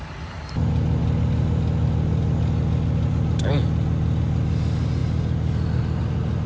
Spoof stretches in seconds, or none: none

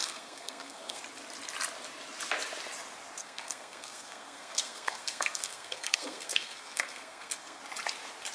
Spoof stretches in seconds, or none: 0.0-1.0 (codec, SNAC); 3.2-7.6

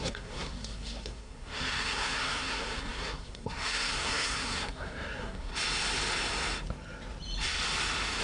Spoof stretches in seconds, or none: 0.0-5.5 (codec, SNAC)

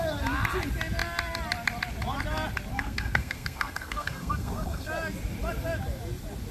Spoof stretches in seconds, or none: 2.7-4.9 (codec, SNAC)